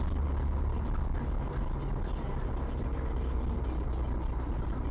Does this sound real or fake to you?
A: real